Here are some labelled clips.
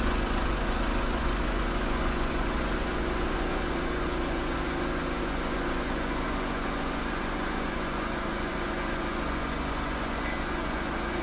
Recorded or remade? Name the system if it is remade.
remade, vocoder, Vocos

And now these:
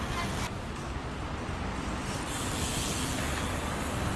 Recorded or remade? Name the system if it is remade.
recorded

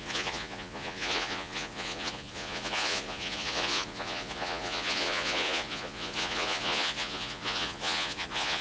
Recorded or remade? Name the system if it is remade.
remade, vocoder, Vocos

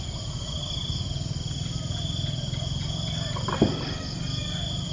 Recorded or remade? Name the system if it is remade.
recorded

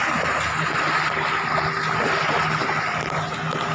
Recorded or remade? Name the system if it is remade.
recorded